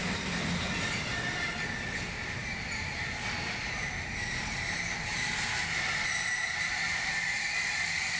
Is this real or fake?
real